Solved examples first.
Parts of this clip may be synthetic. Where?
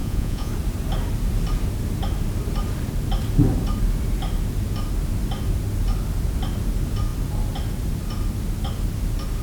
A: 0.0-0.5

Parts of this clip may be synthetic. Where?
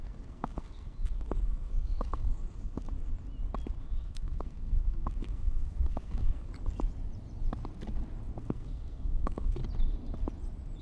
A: 0.0-3.1; 3.8-6.5; 8.4-9.6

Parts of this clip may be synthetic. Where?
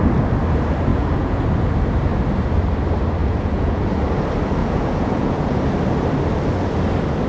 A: 0.9-1.4; 3.2-3.8; 4.6-5.6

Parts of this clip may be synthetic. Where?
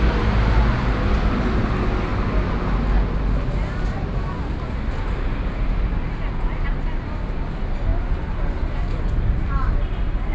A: none